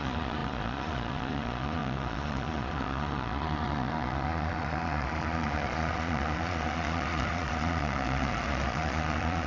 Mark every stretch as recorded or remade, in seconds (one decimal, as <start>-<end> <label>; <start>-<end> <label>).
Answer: 0.0-9.5 remade